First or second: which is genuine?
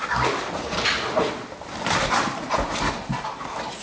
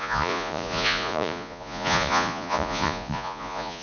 first